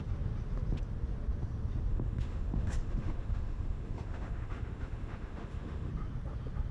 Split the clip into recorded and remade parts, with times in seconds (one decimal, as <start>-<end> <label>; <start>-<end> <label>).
0.0-1.9 recorded; 1.9-5.9 remade; 5.9-6.7 recorded